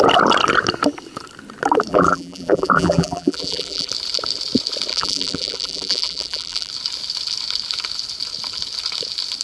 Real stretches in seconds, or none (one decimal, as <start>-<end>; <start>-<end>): 0.0-1.9; 3.9-4.9; 6.7-9.4